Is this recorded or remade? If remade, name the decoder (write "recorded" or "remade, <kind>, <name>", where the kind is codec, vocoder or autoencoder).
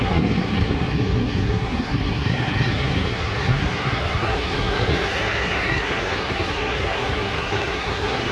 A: remade, codec, SNAC